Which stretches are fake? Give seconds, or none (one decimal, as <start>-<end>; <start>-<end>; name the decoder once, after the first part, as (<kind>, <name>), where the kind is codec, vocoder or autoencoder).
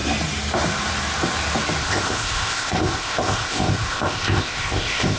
1.8-5.2 (codec, ZipCodec)